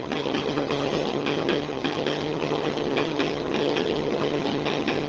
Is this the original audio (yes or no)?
no